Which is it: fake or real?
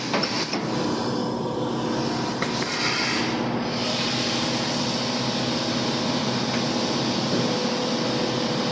real